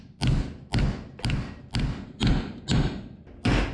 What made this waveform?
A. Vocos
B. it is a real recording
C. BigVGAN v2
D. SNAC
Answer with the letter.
B